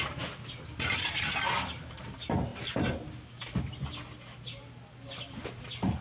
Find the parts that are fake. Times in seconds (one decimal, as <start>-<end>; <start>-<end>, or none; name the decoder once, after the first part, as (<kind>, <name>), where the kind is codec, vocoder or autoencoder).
none